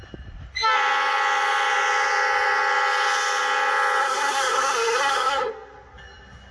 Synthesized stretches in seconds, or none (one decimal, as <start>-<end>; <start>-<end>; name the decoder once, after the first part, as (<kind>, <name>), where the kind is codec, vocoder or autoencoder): 4.0-5.5 (codec, SNAC)